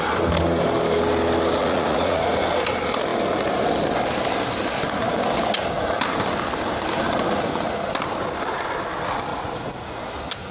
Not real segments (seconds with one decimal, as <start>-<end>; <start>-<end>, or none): 1.6-2.2; 9.3-10.0